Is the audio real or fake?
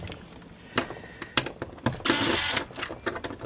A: real